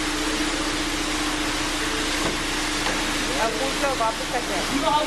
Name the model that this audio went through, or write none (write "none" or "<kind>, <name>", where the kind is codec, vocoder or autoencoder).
none